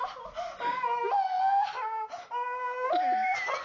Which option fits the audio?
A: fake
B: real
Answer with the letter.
B